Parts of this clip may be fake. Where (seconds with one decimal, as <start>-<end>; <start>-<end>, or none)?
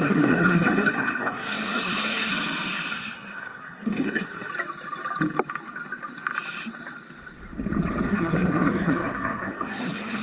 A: 0.0-2.3; 2.9-4.5; 8.1-10.2